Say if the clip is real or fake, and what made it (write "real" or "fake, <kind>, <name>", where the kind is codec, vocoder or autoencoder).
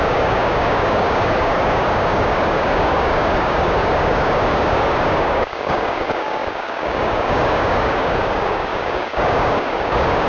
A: fake, codec, DAC